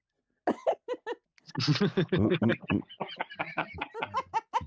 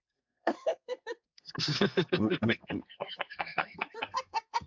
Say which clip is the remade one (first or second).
second